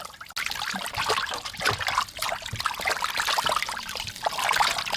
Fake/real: real